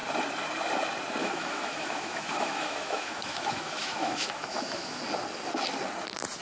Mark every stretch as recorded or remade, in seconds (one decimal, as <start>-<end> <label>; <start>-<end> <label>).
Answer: 0.0-1.2 recorded; 1.2-5.0 remade; 5.0-6.4 recorded